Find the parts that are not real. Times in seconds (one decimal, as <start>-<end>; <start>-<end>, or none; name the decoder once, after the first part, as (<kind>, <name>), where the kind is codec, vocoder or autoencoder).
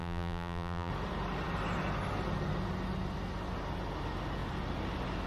0.0-0.9 (vocoder, BigVGAN v2)